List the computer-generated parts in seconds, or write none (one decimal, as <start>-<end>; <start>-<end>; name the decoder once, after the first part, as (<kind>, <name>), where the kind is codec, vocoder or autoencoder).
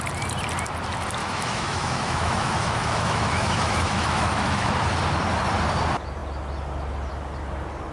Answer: 1.2-4.7 (autoencoder, DAC-VAE)